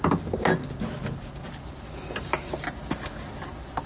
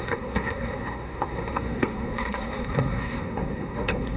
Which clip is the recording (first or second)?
first